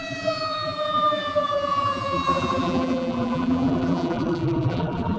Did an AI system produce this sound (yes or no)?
yes